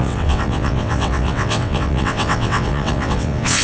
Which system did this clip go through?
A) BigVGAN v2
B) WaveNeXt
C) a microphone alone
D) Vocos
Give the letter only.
B